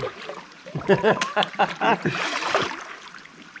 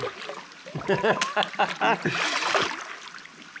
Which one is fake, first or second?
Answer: first